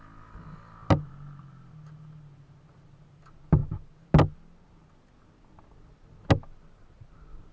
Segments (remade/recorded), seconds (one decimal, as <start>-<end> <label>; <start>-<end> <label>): 0.0-7.5 recorded